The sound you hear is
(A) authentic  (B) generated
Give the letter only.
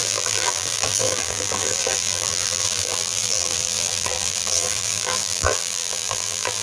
B